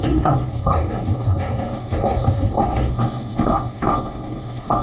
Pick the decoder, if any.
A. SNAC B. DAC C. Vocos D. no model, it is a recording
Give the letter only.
A